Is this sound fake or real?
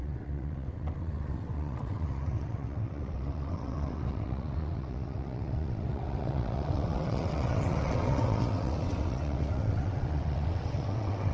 fake